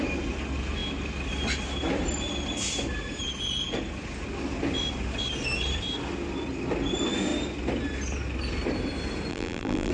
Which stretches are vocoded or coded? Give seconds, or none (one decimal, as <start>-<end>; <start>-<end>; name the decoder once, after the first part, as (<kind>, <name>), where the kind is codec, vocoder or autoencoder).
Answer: 9.3-9.9 (vocoder, BigVGAN v2)